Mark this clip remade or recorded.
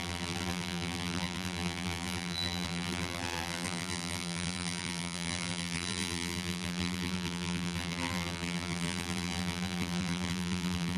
remade